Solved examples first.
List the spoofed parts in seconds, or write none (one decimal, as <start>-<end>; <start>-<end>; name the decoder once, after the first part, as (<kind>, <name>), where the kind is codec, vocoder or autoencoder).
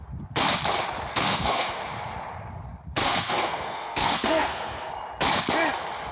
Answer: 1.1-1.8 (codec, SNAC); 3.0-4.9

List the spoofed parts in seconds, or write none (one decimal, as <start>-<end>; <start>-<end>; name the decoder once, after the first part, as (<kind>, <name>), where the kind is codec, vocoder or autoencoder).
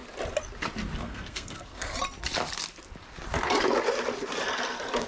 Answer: 1.0-1.9 (codec, SNAC)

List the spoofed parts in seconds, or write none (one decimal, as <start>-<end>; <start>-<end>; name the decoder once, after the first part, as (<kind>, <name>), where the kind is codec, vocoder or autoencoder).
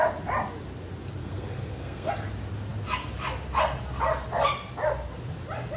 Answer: 1.2-2.1 (codec, SNAC)